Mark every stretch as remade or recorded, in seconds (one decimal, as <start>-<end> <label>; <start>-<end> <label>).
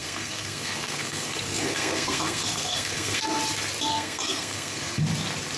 0.0-3.4 remade; 3.4-3.9 recorded; 3.9-5.0 remade; 5.0-5.6 recorded